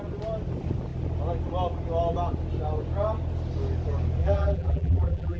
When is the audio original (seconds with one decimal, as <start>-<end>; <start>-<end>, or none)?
0.0-4.2